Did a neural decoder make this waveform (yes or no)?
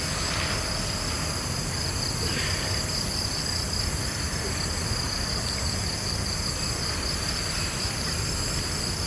no